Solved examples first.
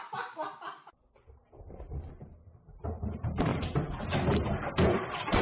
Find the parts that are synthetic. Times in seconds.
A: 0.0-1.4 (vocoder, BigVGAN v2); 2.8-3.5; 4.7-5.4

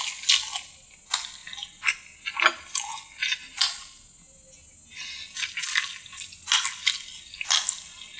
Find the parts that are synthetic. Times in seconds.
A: none

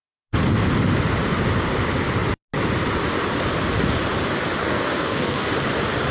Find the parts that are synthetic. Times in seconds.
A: 4.6-5.5 (codec, SNAC)

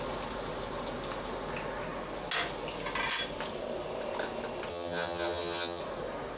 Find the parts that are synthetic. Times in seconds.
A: 4.7-5.8 (vocoder, HiFi-GAN)

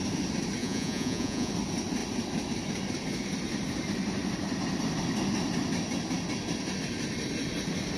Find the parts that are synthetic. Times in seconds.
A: 0.6-1.5 (vocoder, Vocos)

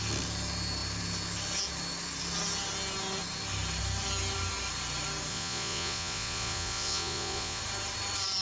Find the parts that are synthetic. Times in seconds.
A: 5.3-7.6 (vocoder, Vocos)

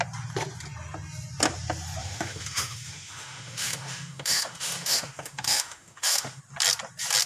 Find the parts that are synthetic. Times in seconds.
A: 2.0-6.4 (autoencoder, DAC-VAE)